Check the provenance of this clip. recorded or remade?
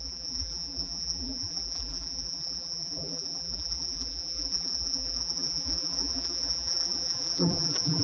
remade